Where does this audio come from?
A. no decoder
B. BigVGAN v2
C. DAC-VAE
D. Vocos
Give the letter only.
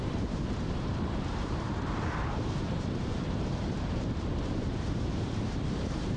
B